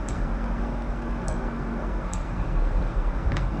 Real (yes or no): no